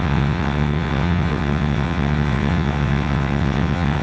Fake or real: fake